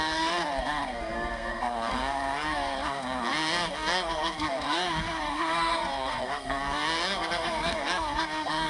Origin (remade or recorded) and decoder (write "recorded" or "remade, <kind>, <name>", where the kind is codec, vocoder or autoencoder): remade, codec, SNAC